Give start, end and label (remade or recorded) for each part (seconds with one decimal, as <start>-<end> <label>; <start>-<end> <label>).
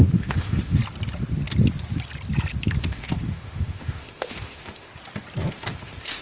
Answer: 0.0-0.8 remade; 0.8-2.8 recorded; 2.8-4.9 remade; 4.9-5.5 recorded; 5.5-6.2 remade